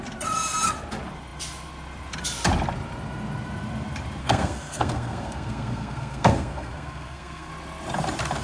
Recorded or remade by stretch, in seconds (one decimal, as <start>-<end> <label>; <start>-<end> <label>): 0.0-4.2 recorded; 4.2-7.5 remade; 7.5-8.4 recorded